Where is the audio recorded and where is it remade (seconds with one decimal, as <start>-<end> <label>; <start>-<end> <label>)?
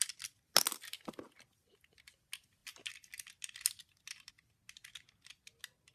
0.0-5.9 recorded